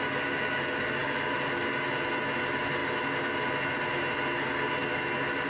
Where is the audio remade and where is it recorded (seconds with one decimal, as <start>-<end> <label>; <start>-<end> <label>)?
0.0-5.5 recorded